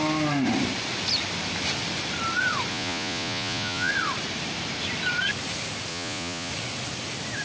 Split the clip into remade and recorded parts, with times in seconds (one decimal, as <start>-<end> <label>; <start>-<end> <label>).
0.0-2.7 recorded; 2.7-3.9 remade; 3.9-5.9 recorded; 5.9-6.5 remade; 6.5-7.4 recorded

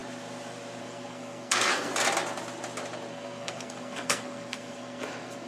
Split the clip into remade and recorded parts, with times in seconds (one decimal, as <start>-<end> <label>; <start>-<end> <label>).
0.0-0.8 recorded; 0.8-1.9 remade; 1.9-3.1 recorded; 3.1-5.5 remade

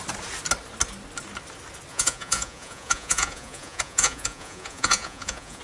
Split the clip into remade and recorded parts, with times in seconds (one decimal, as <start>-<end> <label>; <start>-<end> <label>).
0.0-1.9 recorded; 1.9-5.6 remade